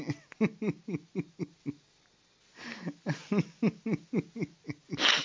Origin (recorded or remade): recorded